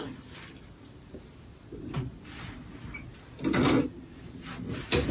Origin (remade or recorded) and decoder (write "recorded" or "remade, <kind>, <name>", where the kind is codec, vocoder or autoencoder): recorded